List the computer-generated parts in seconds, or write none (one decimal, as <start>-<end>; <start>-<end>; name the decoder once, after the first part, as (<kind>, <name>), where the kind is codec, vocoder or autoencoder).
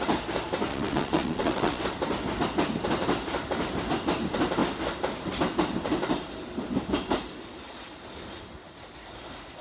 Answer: 0.7-1.8 (vocoder, WaveNeXt)